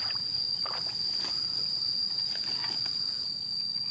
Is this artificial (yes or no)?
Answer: no